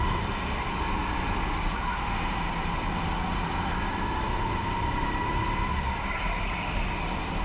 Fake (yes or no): no